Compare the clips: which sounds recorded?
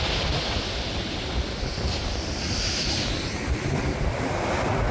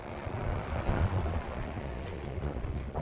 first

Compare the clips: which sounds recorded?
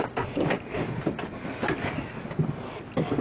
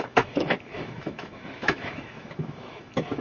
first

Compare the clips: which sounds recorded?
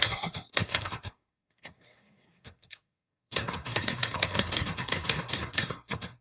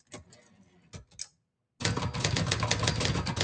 second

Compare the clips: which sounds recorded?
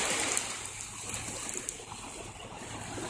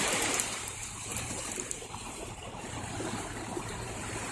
first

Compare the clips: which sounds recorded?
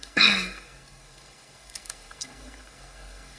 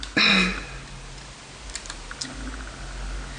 second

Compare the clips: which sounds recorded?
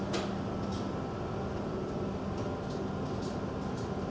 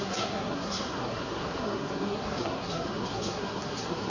first